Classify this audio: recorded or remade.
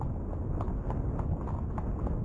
recorded